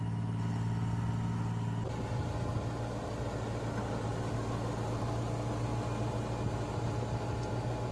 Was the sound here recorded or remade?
recorded